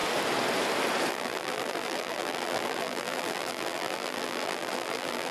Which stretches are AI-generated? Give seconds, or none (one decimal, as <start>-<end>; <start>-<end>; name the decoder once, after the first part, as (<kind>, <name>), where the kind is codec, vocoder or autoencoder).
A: 1.1-5.3 (vocoder, BigVGAN v2)